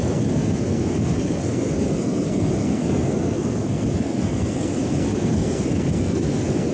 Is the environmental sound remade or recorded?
remade